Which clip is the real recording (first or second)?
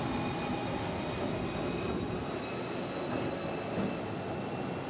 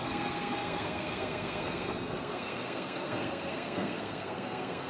first